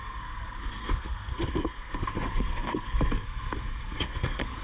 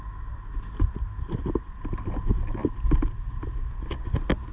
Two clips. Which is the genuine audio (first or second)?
second